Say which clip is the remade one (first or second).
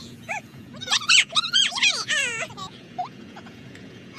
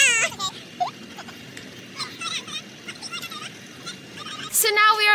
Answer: first